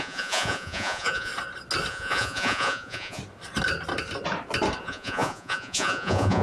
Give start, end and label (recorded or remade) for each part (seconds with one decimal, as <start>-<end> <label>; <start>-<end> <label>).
0.0-1.3 remade; 1.3-1.9 recorded; 1.9-3.2 remade; 3.2-4.8 recorded; 4.8-6.4 remade